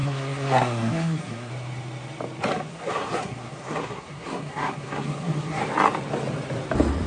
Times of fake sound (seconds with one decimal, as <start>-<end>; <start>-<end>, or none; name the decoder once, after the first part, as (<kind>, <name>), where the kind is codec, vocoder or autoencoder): 0.0-1.5 (codec, SNAC); 2.7-5.6